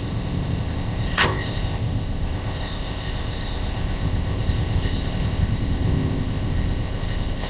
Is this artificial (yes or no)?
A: yes